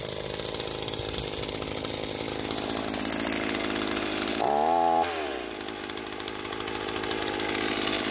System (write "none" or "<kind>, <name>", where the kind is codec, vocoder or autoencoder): none